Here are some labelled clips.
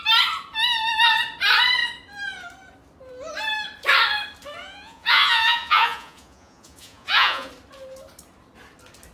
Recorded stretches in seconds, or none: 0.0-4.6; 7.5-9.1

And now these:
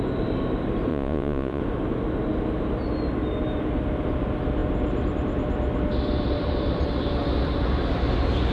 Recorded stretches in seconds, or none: 0.0-0.9; 1.6-8.5

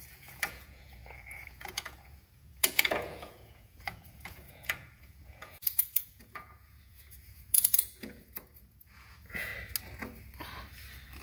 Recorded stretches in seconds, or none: 9.5-11.2

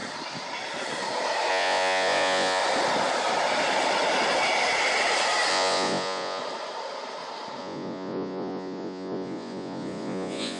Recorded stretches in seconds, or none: 0.0-1.5; 2.6-5.5; 6.4-7.6

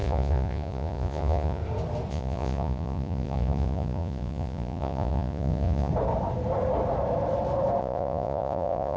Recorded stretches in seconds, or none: 1.6-2.1; 5.9-7.8

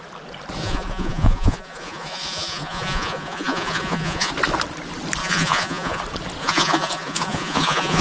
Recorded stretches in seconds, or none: 0.0-0.6; 4.3-5.2; 6.0-6.4